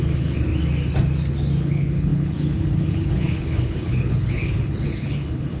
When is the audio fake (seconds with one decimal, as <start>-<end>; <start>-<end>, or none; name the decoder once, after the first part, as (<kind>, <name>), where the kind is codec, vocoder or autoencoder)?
0.0-0.5 (codec, HILCodec); 1.6-5.6